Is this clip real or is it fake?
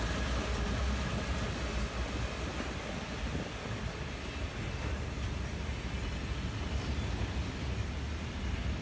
real